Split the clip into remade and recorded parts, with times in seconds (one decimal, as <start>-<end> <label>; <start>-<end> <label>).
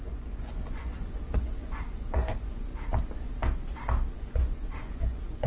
0.0-2.7 remade; 2.7-4.1 recorded; 4.1-5.5 remade